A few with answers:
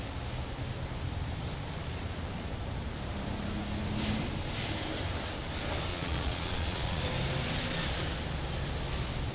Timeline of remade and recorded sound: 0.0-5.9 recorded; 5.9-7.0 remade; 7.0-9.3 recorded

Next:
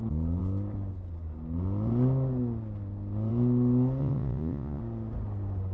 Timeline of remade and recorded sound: 0.0-4.0 recorded; 4.0-4.8 remade; 4.8-5.7 recorded

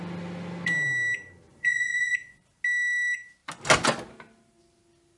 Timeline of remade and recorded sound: 0.0-1.5 recorded; 1.5-2.4 remade; 2.4-5.2 recorded

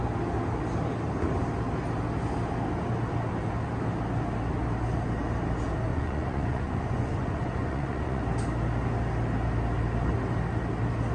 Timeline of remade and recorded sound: 0.0-5.9 recorded; 5.9-8.2 remade; 8.2-11.1 recorded

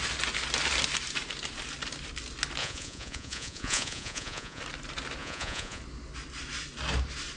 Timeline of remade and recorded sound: 0.0-2.6 recorded; 2.6-4.6 remade; 4.6-5.2 recorded; 5.2-5.8 remade; 5.8-7.4 recorded

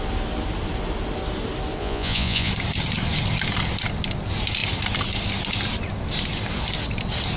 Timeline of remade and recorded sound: 0.0-1.8 recorded; 1.8-2.5 remade; 2.5-7.4 recorded